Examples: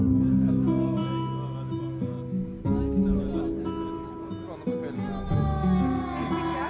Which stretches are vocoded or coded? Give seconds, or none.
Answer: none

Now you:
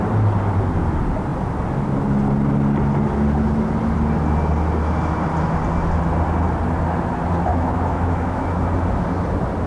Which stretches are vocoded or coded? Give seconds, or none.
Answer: 7.5-8.5 (autoencoder, DAC-VAE)

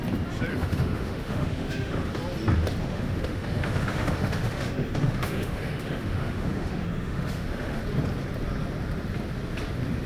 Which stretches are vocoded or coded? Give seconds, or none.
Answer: 0.5-2.2 (autoencoder, DAC-VAE); 2.8-7.8

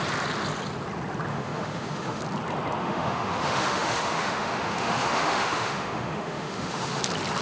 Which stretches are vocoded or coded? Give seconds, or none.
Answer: 1.3-2.2 (autoencoder, DAC-VAE); 2.8-7.0